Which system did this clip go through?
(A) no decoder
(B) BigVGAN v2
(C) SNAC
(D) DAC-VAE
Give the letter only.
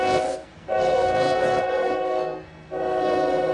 C